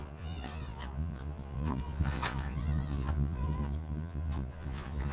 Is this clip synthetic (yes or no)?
yes